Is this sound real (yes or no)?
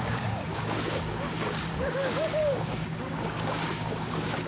no